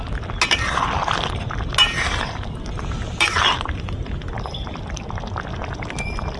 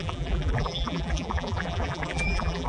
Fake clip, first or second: second